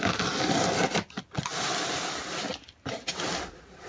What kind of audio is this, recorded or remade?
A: recorded